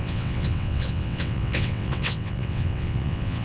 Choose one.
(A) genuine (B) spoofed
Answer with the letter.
B